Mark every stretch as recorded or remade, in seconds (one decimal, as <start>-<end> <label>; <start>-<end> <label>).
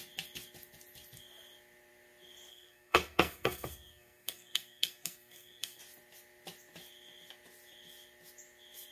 0.0-2.5 recorded; 2.5-5.8 remade; 5.8-8.9 recorded